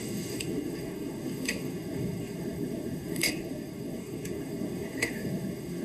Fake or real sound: fake